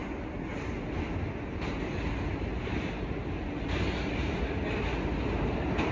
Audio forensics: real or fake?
real